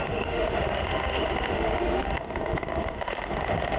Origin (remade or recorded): remade